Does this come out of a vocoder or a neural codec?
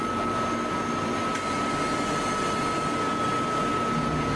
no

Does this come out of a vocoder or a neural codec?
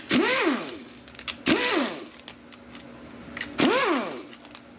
no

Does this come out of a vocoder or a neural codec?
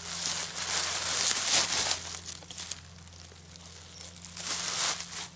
no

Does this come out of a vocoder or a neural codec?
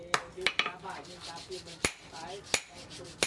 no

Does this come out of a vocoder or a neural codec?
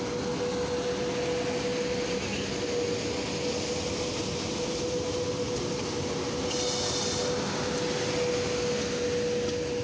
no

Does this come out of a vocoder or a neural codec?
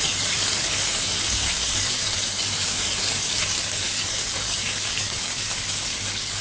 yes